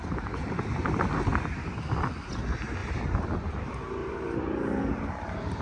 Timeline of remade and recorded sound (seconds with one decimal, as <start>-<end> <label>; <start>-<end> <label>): 0.0-2.8 recorded; 2.8-3.3 remade; 3.3-4.0 recorded; 4.0-5.1 remade; 5.1-5.6 recorded